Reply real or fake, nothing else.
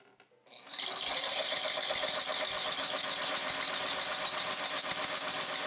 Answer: real